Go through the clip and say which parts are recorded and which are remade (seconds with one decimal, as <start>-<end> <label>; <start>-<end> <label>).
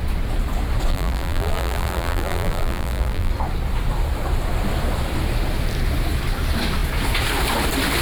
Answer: 0.0-0.9 recorded; 0.9-3.3 remade; 3.3-8.0 recorded